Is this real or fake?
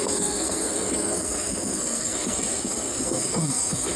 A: fake